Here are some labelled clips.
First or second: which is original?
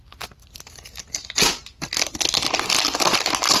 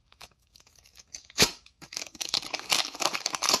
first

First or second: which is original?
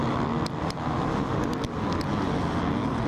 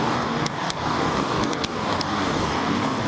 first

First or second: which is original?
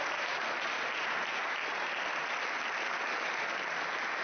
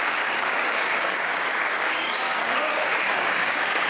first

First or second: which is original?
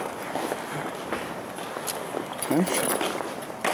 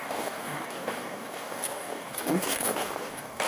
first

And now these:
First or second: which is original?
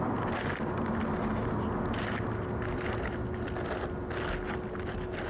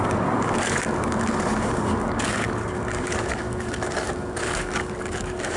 first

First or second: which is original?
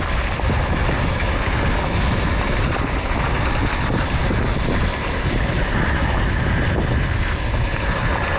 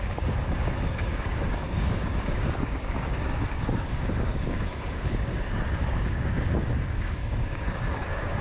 first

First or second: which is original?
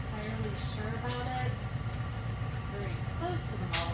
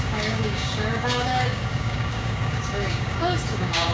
first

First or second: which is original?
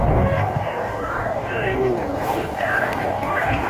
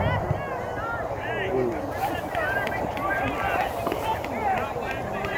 second